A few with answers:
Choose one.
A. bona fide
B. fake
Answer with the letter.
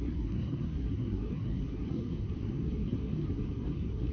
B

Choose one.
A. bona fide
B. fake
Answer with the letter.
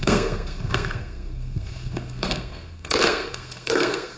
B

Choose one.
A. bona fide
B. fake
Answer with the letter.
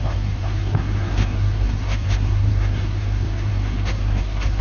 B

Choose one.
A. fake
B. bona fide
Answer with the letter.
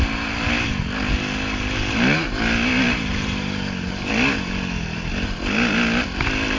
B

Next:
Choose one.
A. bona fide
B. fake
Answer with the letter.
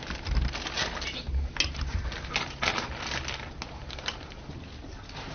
A